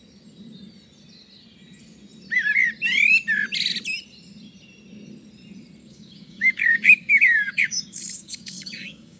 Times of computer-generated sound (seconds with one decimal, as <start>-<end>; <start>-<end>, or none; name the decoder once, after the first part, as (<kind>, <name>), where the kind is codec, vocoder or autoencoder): 5.8-9.2 (codec, DAC)

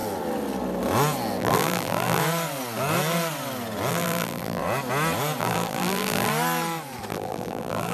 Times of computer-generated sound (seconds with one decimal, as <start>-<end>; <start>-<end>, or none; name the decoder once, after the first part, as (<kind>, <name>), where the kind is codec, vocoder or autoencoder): 1.4-2.2 (vocoder, BigVGAN v2); 3.9-4.6; 5.4-6.3; 7.1-7.9